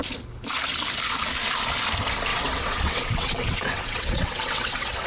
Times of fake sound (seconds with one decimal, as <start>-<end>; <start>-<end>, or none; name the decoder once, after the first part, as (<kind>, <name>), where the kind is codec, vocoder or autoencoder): 2.3-5.1 (vocoder, WaveNeXt)